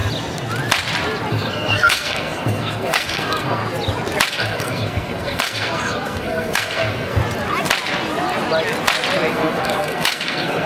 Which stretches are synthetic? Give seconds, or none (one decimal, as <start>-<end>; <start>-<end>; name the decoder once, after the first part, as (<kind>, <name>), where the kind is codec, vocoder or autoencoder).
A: 1.3-3.6 (codec, SNAC); 4.3-7.2; 9.3-10.7